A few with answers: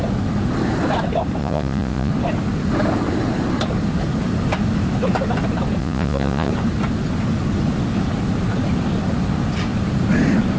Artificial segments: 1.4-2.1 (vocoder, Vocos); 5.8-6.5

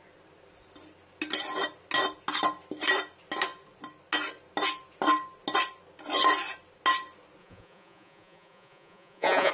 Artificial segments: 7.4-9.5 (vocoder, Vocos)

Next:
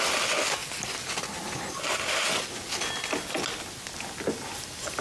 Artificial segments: none